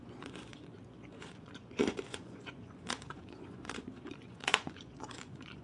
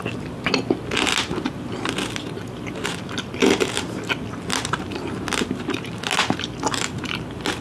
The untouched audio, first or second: second